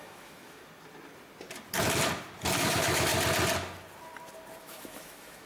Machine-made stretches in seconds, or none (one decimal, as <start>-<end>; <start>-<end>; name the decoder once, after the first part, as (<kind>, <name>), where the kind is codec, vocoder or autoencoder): 0.0-0.6 (autoencoder, DAC-VAE); 2.6-3.1; 4.6-5.5